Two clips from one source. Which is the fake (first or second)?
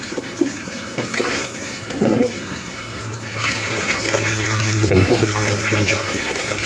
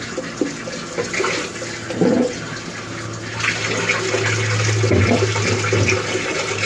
first